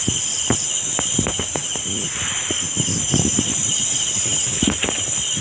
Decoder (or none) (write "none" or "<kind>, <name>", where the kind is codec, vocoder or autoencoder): none